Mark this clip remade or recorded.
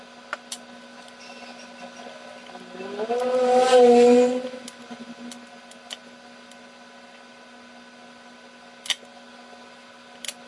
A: recorded